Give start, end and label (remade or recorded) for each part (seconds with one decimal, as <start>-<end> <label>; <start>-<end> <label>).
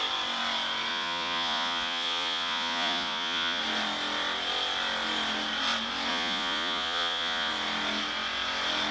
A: 0.0-0.9 recorded; 0.9-3.6 remade; 3.6-6.1 recorded; 6.1-7.5 remade; 7.5-8.9 recorded